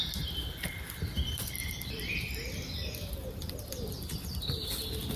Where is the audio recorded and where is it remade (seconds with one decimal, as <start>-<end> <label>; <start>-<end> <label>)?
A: 0.0-1.6 recorded; 1.6-4.2 remade; 4.2-5.2 recorded